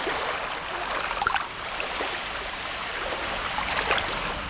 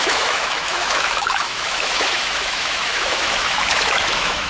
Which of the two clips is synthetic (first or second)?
second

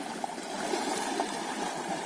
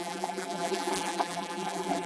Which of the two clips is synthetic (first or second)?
second